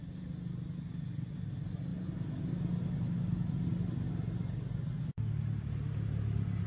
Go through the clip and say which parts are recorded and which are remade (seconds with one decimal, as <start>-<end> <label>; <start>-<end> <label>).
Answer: 0.0-6.7 recorded